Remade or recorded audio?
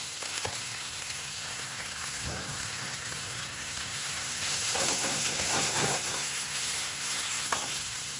remade